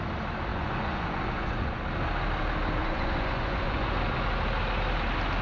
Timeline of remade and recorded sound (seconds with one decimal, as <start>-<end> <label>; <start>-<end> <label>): 0.0-0.5 recorded; 0.5-1.8 remade; 1.8-2.8 recorded; 2.8-3.9 remade; 3.9-5.4 recorded